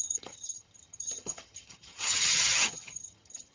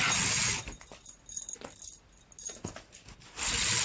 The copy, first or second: first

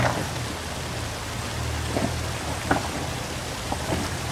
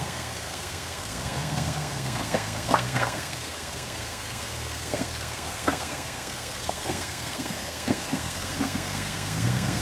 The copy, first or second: second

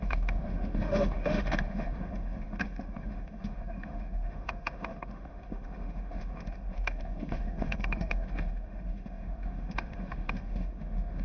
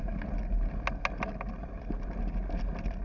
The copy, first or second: first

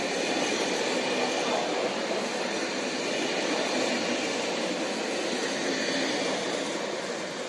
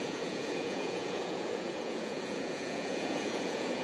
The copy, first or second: second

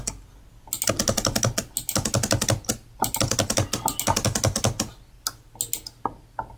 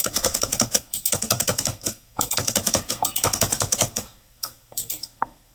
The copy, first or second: second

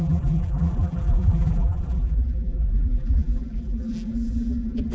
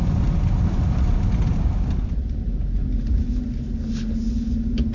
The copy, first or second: first